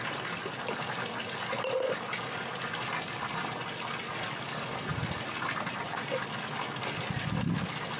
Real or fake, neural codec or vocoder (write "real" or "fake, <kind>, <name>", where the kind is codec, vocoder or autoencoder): real